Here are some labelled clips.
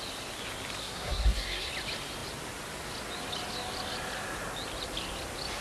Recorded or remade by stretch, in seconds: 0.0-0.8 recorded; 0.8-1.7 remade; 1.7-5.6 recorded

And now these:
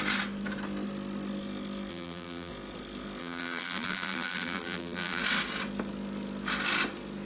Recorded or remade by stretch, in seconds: 0.0-1.9 recorded; 1.9-2.5 remade; 2.5-3.2 recorded; 3.2-5.2 remade; 5.2-7.3 recorded

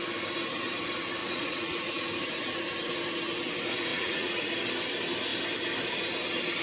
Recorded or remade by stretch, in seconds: 0.0-1.2 recorded; 1.2-2.1 remade; 2.1-3.9 recorded; 3.9-4.5 remade; 4.5-6.6 recorded